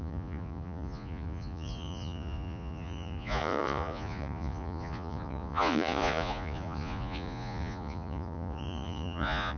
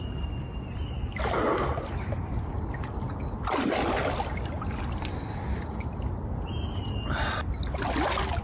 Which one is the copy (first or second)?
first